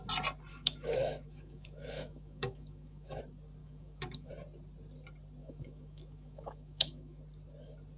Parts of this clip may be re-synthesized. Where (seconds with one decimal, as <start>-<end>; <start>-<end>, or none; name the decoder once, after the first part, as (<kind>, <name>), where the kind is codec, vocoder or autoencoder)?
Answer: 0.5-3.2 (autoencoder, DAC-VAE); 3.6-4.3; 5.4-7.2